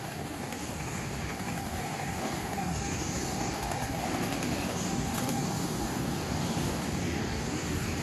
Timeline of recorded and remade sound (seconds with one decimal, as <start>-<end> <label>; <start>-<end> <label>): 0.0-8.0 remade